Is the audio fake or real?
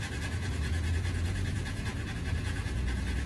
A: fake